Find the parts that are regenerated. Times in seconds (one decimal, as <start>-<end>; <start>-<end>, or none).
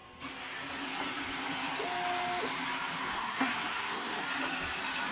3.1-4.2